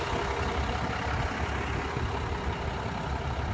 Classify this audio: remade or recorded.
recorded